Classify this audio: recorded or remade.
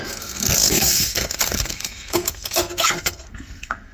remade